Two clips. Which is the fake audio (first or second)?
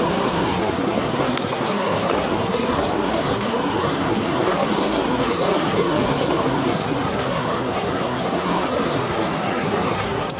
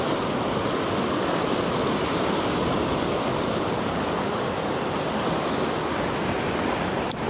first